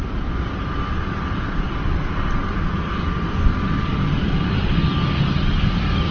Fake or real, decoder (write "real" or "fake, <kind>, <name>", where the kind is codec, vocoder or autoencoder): real